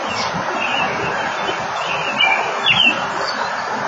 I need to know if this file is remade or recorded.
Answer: recorded